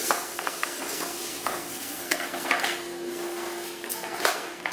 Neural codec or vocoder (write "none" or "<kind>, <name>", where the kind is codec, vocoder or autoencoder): codec, SNAC